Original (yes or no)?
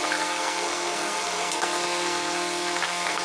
no